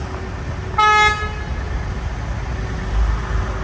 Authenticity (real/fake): real